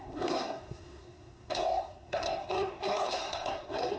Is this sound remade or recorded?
remade